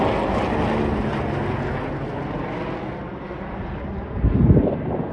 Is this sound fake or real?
real